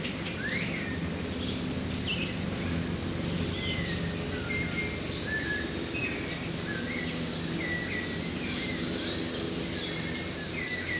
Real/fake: real